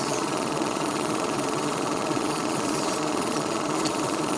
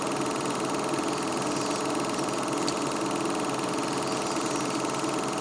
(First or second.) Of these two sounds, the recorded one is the second